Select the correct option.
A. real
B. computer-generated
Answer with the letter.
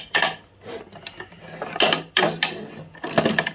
A